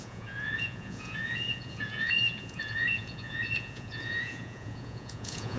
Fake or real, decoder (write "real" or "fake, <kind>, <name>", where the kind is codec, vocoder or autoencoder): fake, vocoder, Vocos